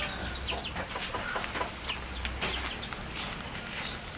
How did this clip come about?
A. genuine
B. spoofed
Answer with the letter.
A